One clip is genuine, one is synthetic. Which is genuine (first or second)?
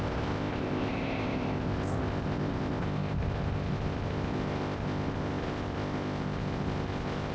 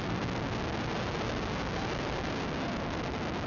second